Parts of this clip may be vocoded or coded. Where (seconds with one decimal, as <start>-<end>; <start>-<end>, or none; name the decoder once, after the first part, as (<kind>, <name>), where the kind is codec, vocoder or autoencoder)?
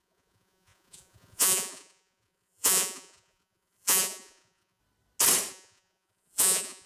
0.0-4.8 (vocoder, Vocos); 5.5-6.9